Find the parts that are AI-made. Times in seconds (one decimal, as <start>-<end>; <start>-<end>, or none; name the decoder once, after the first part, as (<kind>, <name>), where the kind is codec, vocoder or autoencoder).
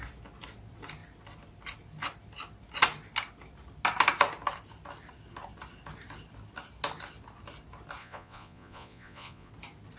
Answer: 8.0-9.5 (vocoder, Vocos)